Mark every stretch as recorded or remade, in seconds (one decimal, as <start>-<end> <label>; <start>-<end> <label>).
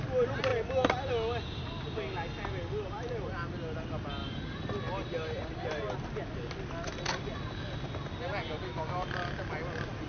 0.0-10.1 recorded